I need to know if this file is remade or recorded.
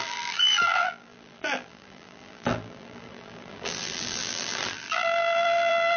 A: remade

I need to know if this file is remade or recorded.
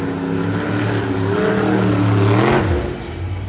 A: recorded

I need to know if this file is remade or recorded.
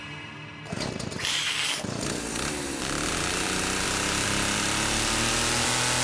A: recorded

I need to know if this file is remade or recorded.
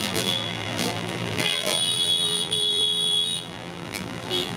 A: remade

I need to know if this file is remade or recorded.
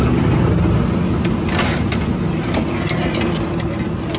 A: recorded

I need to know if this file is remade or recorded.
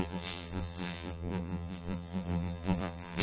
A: remade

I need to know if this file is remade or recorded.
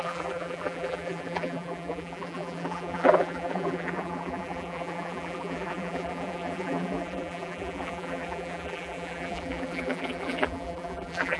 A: remade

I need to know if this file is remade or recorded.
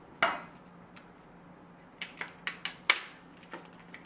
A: recorded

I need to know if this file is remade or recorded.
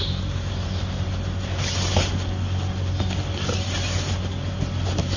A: recorded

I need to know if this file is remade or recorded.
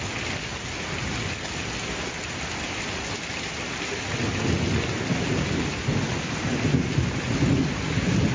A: recorded